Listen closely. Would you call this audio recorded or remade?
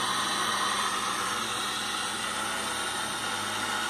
recorded